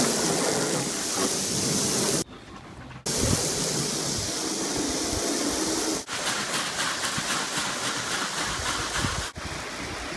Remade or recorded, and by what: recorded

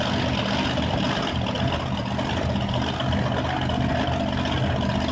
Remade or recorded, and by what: recorded